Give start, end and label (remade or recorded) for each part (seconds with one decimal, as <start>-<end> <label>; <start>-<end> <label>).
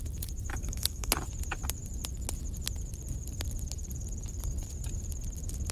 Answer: 0.0-0.5 recorded; 0.5-1.1 remade; 1.1-5.7 recorded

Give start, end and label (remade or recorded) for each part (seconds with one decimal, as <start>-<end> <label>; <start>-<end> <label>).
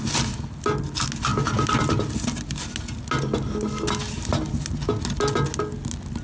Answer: 0.0-6.2 recorded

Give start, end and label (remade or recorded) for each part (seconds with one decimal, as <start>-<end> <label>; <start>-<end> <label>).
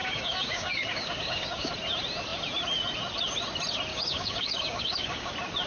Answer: 0.0-1.7 remade; 1.7-3.9 recorded; 3.9-5.3 remade; 5.3-5.7 recorded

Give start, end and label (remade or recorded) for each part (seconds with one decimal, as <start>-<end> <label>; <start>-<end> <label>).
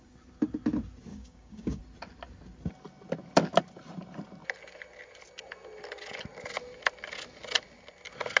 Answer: 0.0-1.1 recorded; 1.1-1.8 remade; 1.8-8.4 recorded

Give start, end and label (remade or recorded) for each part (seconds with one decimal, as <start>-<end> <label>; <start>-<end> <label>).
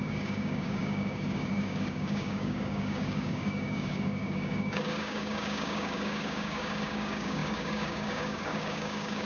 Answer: 0.0-9.3 remade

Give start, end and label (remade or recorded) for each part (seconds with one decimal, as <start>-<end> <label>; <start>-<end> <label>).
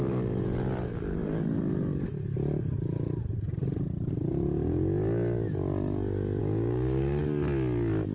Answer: 0.0-6.4 recorded; 6.4-7.2 remade; 7.2-8.1 recorded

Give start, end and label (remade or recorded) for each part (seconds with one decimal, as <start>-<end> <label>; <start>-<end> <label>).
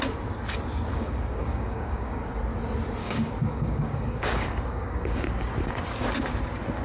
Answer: 0.0-0.9 recorded; 0.9-2.3 remade; 2.3-3.0 recorded; 3.0-5.8 remade; 5.8-6.8 recorded